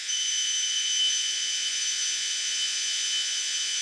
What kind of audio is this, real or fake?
fake